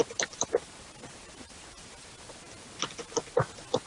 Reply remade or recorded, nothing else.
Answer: recorded